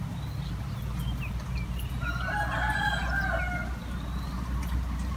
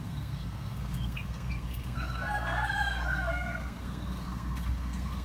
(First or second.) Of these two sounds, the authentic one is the first